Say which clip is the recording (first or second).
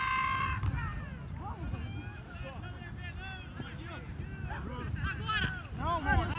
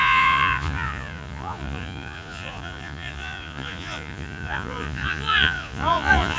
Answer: first